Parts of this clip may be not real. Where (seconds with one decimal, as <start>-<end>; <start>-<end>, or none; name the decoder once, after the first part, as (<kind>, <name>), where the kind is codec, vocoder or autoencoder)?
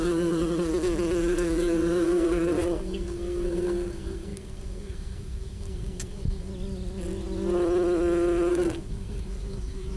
0.0-0.7 (codec, SNAC); 1.2-6.5; 8.5-10.0